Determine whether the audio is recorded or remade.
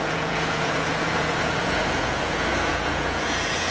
remade